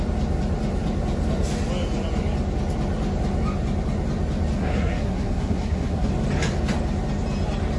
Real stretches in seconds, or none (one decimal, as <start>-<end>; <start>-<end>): 0.0-4.6; 6.1-7.8